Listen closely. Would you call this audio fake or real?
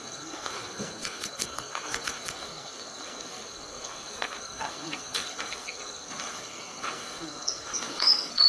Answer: fake